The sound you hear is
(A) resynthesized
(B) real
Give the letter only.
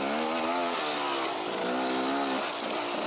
B